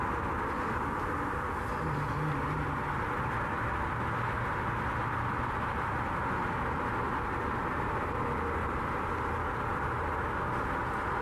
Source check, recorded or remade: recorded